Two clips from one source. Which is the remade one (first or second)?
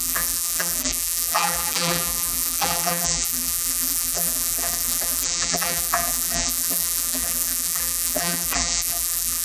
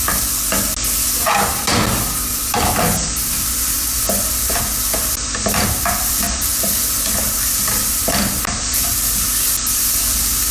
first